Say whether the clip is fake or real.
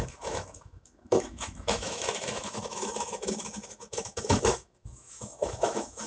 fake